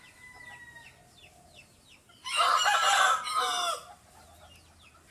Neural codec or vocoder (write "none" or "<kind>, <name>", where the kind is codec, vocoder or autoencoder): none